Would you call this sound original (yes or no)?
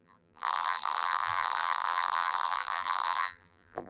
no